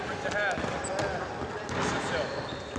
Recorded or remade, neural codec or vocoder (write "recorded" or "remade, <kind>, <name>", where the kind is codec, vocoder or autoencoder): recorded